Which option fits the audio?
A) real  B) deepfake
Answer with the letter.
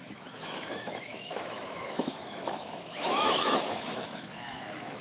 B